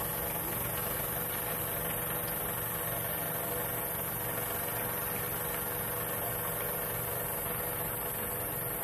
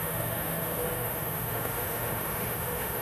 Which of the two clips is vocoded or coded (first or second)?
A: second